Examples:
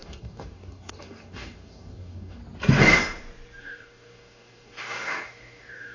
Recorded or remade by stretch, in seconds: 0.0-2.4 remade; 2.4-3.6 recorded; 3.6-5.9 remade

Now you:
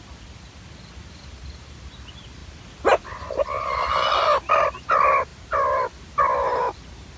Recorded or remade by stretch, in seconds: 0.0-7.2 recorded

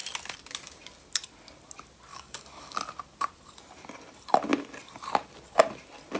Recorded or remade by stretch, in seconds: 0.0-2.1 recorded; 2.1-2.8 remade; 2.8-6.2 recorded

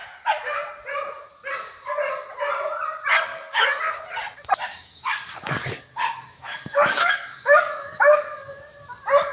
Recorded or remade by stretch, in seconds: 0.0-3.3 recorded; 3.3-3.8 remade; 3.8-4.7 recorded; 4.7-8.6 remade; 8.6-9.3 recorded

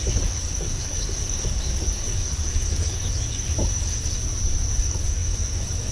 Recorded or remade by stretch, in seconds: 0.0-4.2 remade; 4.2-4.7 recorded; 4.7-5.9 remade

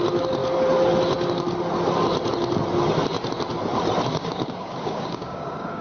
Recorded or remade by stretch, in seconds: 0.0-4.1 recorded; 4.1-5.8 remade

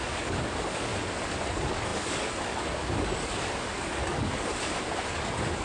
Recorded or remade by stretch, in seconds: 0.0-0.9 remade; 0.9-1.5 recorded; 1.5-4.5 remade; 4.5-5.1 recorded; 5.1-5.6 remade